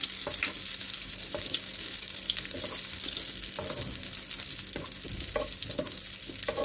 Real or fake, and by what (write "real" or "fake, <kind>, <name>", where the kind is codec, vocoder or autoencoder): real